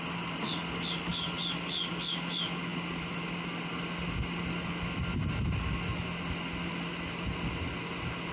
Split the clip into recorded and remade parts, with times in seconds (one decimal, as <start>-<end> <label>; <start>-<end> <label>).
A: 0.0-8.3 recorded